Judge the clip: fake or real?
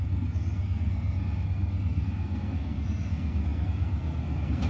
fake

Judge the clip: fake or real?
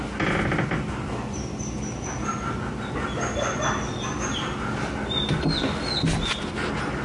real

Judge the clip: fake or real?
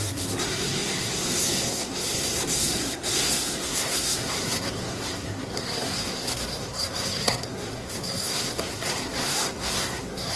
fake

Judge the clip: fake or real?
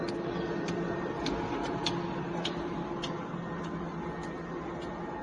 real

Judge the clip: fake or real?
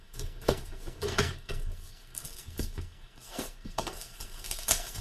fake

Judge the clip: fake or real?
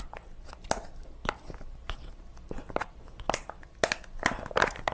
real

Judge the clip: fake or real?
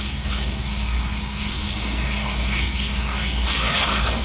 fake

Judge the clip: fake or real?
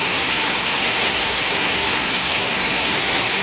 fake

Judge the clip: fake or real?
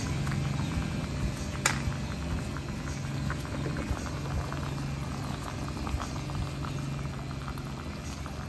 real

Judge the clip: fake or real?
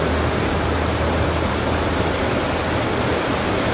real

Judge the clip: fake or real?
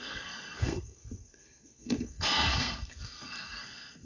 fake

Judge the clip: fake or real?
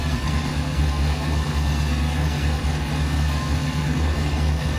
fake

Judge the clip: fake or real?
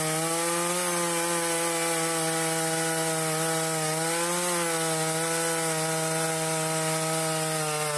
real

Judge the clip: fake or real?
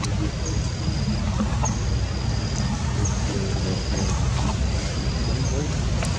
real